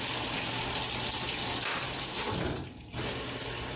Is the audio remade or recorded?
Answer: recorded